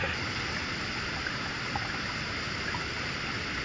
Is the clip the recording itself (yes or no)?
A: yes